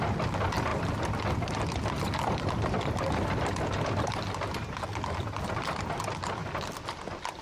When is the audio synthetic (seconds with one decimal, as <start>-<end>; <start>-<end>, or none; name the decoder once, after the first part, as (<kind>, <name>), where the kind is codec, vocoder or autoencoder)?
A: none